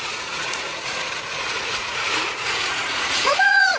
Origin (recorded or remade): remade